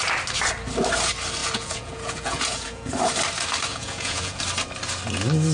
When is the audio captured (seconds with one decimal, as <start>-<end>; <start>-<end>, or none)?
0.0-1.4; 2.9-3.7; 4.4-5.5